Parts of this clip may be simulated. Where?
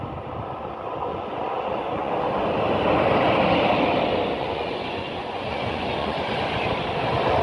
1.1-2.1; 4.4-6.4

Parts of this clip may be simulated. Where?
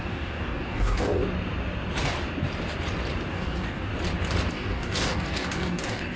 0.0-1.2; 3.3-3.9; 4.5-6.2